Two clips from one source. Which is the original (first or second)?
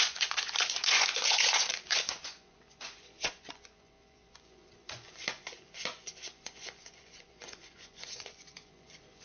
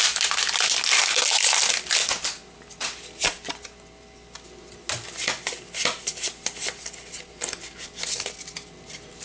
second